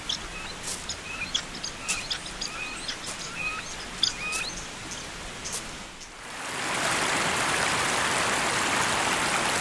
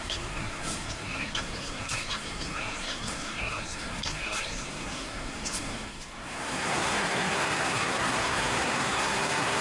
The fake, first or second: second